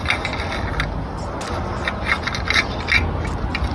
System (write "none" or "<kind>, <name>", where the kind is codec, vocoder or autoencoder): none